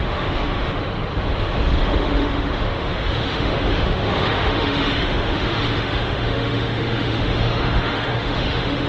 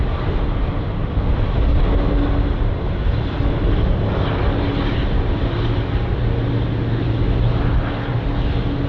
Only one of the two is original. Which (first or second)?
second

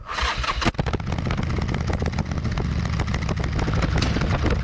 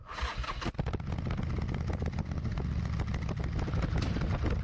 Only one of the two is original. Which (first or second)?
first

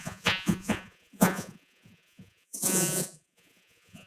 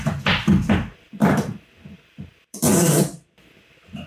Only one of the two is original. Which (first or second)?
second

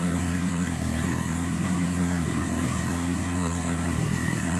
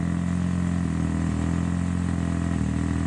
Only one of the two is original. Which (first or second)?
second